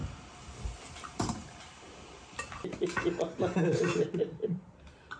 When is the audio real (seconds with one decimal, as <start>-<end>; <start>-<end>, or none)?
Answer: 0.0-5.2